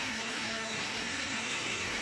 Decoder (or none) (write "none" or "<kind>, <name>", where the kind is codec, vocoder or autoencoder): codec, SNAC